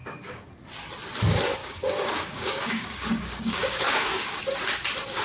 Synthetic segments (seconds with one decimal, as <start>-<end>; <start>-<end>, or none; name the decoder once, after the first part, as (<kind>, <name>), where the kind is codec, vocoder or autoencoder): 0.0-0.5 (codec, DAC); 1.6-4.4